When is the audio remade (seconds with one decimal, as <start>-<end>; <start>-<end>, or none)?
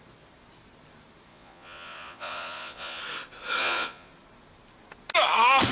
1.3-3.0; 3.6-4.1